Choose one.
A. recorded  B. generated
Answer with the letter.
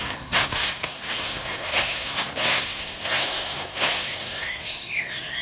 B